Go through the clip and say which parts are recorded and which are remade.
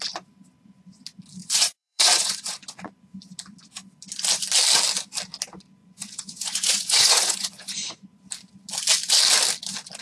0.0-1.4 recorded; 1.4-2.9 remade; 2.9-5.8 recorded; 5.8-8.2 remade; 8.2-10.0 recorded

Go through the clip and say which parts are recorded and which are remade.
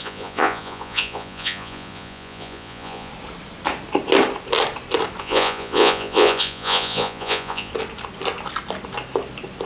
0.0-3.1 remade; 3.1-5.2 recorded; 5.2-7.7 remade; 7.7-9.7 recorded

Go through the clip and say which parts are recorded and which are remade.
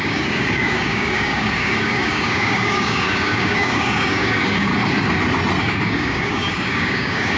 0.0-4.7 remade; 4.7-5.6 recorded; 5.6-7.4 remade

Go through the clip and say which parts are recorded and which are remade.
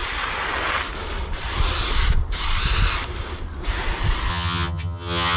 0.0-4.3 recorded; 4.3-5.4 remade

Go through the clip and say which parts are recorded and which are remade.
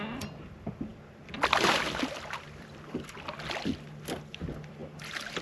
0.0-5.4 recorded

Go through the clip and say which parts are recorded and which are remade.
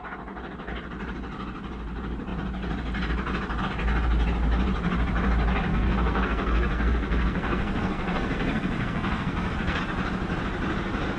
0.0-5.7 recorded; 5.7-9.8 remade; 9.8-11.2 recorded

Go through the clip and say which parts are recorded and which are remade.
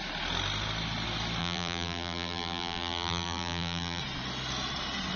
0.0-1.4 recorded; 1.4-4.0 remade; 4.0-5.2 recorded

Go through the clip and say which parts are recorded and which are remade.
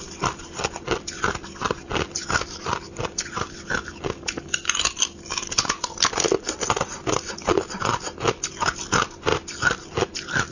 0.0-10.5 recorded